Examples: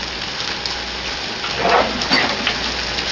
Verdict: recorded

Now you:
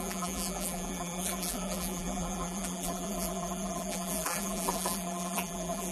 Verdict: remade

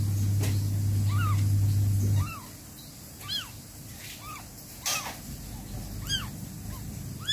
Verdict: recorded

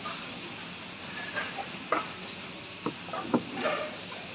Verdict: recorded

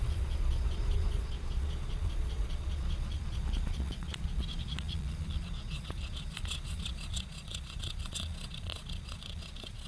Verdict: remade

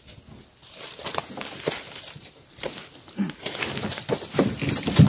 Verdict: recorded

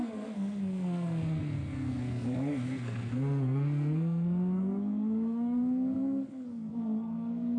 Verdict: remade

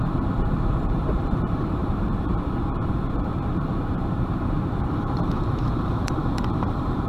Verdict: remade